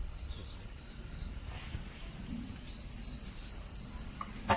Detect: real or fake fake